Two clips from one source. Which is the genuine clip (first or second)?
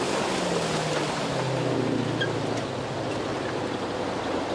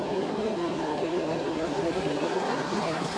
first